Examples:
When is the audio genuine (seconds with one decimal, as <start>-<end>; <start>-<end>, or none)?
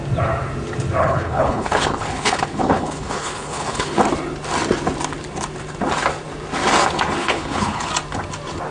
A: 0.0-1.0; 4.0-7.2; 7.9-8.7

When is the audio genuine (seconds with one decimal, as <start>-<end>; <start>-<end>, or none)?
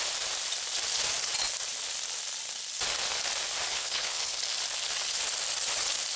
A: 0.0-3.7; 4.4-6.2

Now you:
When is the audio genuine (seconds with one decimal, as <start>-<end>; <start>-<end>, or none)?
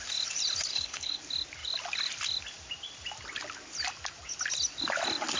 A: 0.0-0.7; 1.2-5.4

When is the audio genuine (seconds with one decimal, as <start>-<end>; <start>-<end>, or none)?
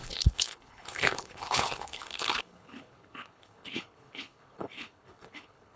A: none